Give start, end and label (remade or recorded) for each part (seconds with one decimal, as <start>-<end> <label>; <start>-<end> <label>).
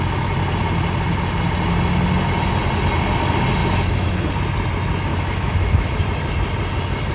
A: 0.0-3.6 recorded; 3.6-4.3 remade; 4.3-5.1 recorded; 5.1-5.9 remade; 5.9-7.1 recorded